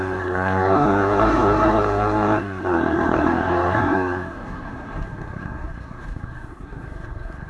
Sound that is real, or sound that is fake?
fake